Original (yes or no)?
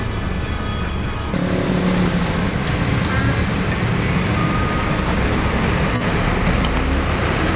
yes